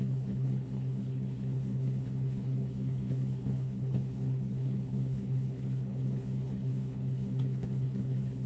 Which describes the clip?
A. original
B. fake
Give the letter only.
B